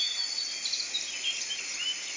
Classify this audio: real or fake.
real